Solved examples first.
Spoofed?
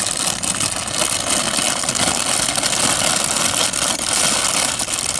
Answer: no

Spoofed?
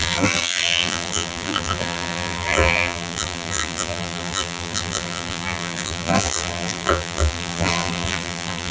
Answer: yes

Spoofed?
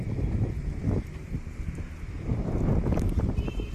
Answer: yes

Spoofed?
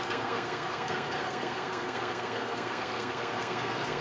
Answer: yes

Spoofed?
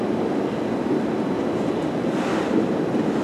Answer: no